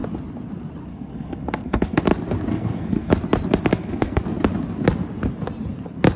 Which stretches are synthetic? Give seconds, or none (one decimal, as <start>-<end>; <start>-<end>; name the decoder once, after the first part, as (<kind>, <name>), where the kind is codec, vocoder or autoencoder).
0.9-2.0 (codec, SNAC); 2.5-3.1; 3.7-4.2